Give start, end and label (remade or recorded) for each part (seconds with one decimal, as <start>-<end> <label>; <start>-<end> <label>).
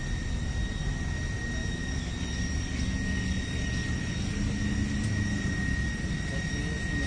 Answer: 0.0-1.6 recorded; 1.6-2.1 remade; 2.1-7.1 recorded